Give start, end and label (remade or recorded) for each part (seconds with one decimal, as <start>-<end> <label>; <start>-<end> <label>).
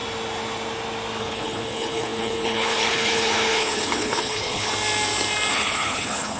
0.0-1.2 recorded; 1.2-4.7 remade; 4.7-5.5 recorded; 5.5-6.4 remade